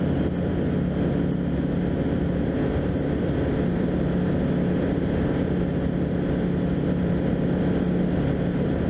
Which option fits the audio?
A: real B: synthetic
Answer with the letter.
A